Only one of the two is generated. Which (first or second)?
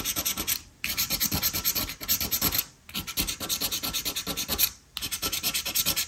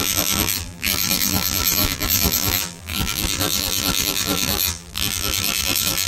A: second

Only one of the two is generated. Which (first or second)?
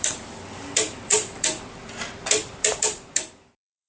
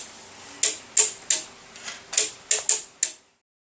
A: first